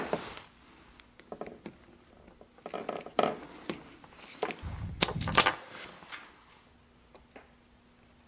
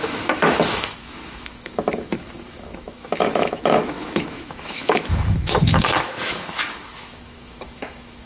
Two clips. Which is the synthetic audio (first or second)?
second